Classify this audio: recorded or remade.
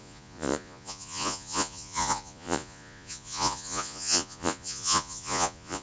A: remade